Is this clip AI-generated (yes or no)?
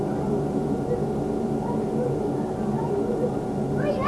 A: no